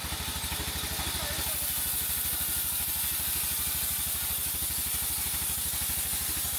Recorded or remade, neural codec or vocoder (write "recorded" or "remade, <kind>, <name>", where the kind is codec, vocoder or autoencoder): recorded